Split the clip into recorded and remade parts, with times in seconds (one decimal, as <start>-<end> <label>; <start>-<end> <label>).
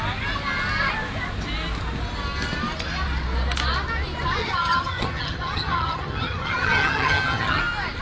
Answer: 0.0-4.4 recorded; 4.4-7.6 remade; 7.6-8.0 recorded